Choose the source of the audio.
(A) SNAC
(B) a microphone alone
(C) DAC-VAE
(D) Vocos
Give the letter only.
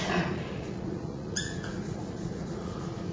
D